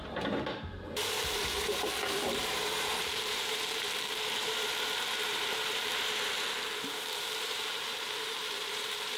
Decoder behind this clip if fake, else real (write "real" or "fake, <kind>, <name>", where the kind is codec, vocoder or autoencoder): fake, vocoder, BigVGAN v2